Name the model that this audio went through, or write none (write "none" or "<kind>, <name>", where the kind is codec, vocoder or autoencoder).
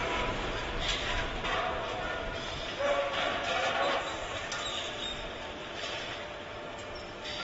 vocoder, BigVGAN v2